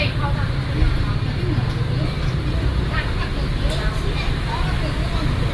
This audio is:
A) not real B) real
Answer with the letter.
A